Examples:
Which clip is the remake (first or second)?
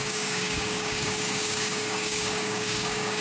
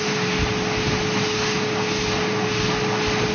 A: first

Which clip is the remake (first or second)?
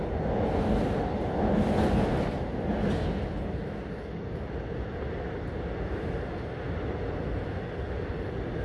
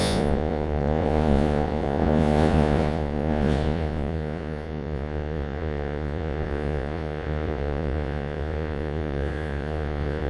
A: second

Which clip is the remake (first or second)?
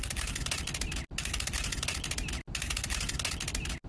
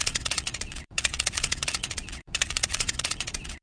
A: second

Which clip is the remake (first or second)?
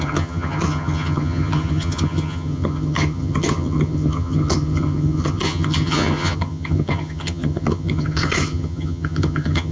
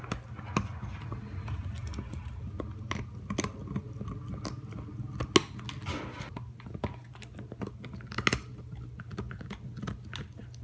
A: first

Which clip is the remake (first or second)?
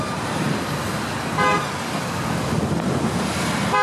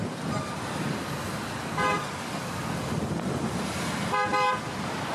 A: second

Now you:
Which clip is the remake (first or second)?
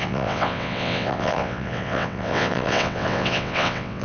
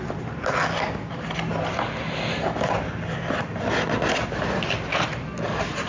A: first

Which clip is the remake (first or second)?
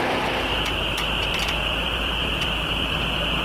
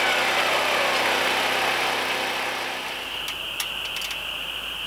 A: first